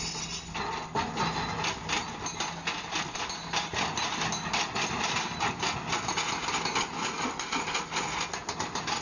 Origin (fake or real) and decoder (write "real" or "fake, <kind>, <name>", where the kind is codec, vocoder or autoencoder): real